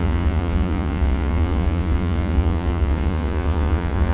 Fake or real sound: fake